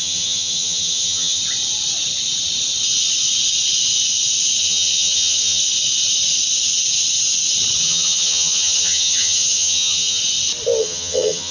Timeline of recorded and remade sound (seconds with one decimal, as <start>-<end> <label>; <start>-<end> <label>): 0.0-1.4 remade; 1.4-4.6 recorded; 4.6-5.6 remade; 5.6-7.8 recorded; 7.8-10.2 remade; 10.2-10.8 recorded; 10.8-11.5 remade